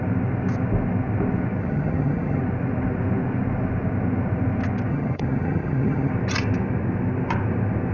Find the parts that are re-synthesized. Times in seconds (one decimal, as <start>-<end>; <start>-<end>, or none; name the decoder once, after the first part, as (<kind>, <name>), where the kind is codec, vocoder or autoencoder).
1.6-2.4 (vocoder, HiFi-GAN); 4.9-6.1